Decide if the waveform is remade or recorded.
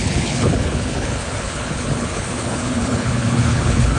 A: remade